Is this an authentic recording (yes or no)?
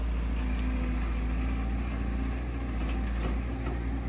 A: yes